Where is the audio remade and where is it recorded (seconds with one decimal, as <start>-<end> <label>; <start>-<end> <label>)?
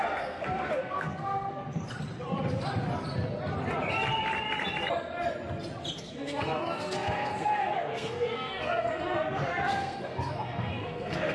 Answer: 0.0-1.6 remade; 1.6-6.0 recorded; 6.0-11.3 remade